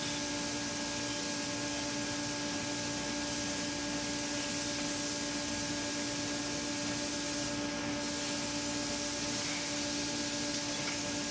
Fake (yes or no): no